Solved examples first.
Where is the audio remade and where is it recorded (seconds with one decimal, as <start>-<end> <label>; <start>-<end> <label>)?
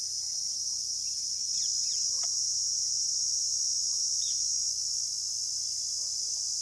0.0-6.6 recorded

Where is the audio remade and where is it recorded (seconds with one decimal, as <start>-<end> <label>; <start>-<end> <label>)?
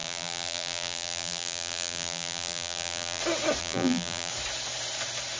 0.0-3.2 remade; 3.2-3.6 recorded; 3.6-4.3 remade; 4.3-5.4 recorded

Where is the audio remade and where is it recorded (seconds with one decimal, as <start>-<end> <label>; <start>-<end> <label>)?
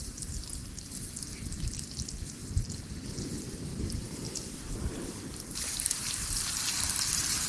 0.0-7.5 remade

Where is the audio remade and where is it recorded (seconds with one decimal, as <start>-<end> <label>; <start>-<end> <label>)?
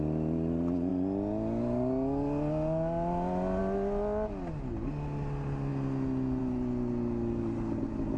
0.0-8.2 recorded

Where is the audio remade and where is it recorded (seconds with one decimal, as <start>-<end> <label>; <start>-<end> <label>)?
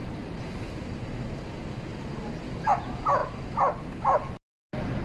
0.0-1.9 recorded; 1.9-2.6 remade; 2.6-5.0 recorded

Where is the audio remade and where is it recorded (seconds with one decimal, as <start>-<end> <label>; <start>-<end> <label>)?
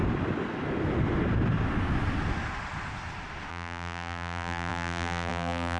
0.0-3.5 recorded; 3.5-5.8 remade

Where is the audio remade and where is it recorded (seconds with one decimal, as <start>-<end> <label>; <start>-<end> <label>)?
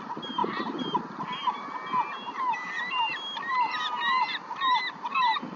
0.0-0.4 remade; 0.4-3.5 recorded; 3.5-5.6 remade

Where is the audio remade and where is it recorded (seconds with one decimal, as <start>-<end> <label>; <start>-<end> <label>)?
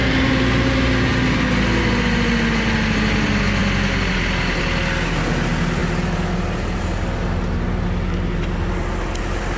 0.0-9.6 recorded